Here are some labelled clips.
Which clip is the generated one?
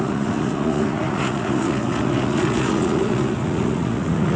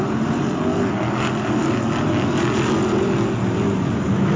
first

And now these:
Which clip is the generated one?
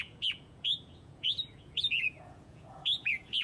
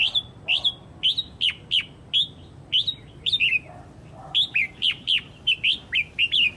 first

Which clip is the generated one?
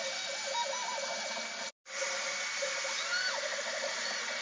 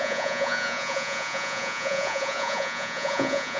second